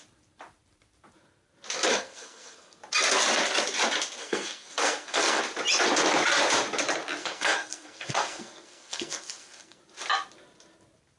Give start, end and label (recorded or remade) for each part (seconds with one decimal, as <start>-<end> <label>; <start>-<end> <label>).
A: 0.0-1.9 recorded; 1.9-2.8 remade; 2.8-4.2 recorded; 4.2-5.4 remade; 5.4-7.2 recorded; 7.2-9.8 remade; 9.8-11.2 recorded